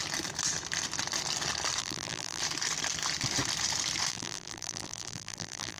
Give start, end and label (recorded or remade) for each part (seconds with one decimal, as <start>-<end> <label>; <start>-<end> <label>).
0.0-1.8 recorded; 1.8-2.4 remade; 2.4-4.1 recorded; 4.1-5.8 remade